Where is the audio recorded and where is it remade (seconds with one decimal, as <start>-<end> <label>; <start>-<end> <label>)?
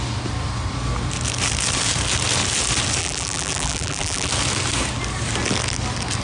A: 0.0-3.0 recorded; 3.0-4.3 remade; 4.3-6.2 recorded